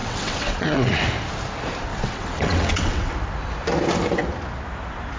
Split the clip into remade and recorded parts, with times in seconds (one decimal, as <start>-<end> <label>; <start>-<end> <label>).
0.0-0.9 remade; 0.9-1.9 recorded; 1.9-3.1 remade; 3.1-5.2 recorded